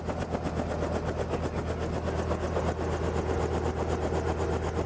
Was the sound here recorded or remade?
recorded